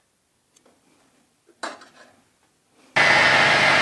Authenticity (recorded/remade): recorded